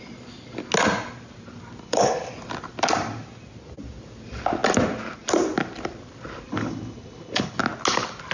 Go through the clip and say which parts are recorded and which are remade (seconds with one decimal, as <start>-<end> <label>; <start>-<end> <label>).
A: 0.0-1.8 recorded; 1.8-2.3 remade; 2.3-6.5 recorded; 6.5-7.6 remade; 7.6-8.3 recorded